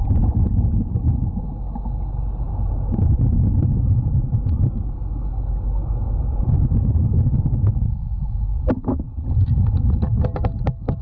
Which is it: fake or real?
real